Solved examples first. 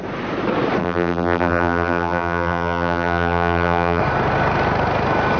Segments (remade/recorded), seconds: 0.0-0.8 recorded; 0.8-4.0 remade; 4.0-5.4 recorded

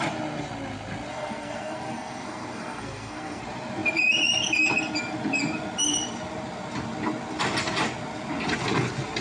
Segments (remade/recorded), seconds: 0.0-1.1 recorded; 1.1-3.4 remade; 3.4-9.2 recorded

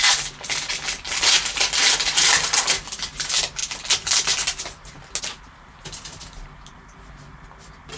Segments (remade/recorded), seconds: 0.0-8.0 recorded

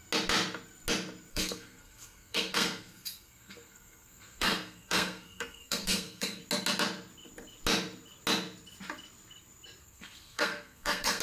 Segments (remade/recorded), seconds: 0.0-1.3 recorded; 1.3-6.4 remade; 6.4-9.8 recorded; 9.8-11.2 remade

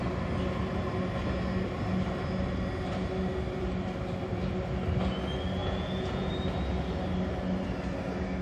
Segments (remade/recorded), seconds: 0.0-5.6 recorded; 5.6-6.3 remade; 6.3-8.4 recorded